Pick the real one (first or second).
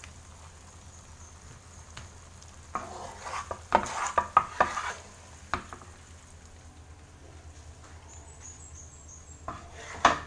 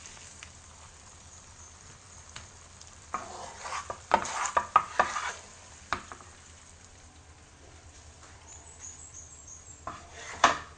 first